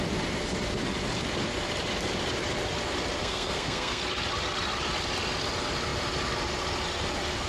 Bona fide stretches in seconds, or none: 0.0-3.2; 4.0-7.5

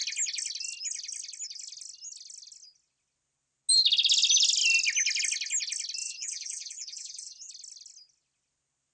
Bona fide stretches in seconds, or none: 0.0-6.0; 7.5-8.9

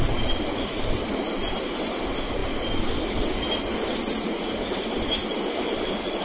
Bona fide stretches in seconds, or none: 0.0-6.2

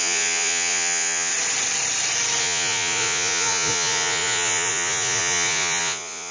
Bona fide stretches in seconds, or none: 1.3-2.4

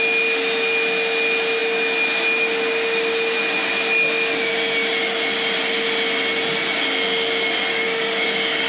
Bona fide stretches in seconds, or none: 0.0-7.7

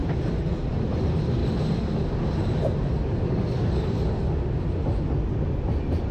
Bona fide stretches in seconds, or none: 0.0-0.7; 1.4-4.6

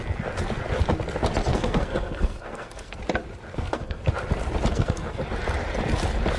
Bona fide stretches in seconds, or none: 0.0-1.5; 3.0-3.5; 4.0-4.7; 5.2-6.4